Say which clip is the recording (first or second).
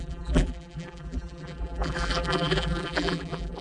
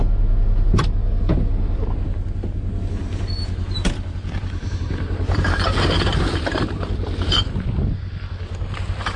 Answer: second